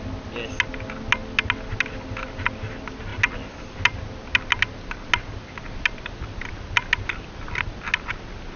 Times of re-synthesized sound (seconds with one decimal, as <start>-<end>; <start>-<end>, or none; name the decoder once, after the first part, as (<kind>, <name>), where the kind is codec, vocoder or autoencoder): none